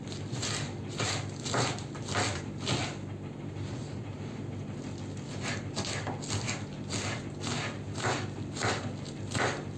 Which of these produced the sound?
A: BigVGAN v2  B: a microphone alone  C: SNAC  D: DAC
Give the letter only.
B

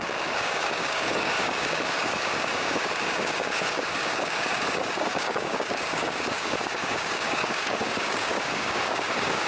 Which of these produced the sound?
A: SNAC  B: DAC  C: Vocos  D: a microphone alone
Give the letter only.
B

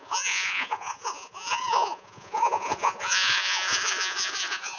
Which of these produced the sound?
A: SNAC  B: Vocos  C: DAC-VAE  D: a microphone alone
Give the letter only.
B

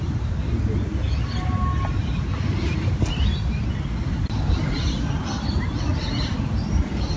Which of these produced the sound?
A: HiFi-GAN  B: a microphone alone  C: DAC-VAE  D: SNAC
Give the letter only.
B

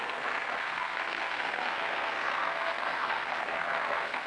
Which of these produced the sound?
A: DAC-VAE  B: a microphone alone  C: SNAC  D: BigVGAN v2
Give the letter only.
C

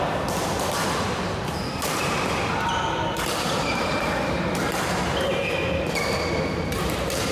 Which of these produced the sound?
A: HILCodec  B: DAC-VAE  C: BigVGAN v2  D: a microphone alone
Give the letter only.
D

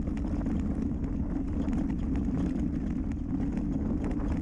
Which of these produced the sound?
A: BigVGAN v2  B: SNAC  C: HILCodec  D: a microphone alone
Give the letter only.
D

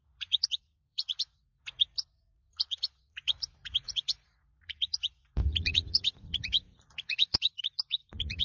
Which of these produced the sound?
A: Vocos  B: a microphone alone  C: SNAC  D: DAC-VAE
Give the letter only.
A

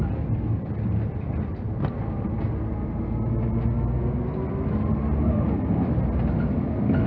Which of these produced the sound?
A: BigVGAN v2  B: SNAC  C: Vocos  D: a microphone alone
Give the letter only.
D